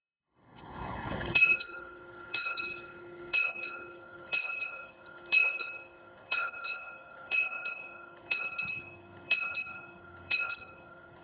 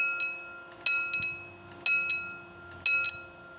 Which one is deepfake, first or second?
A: first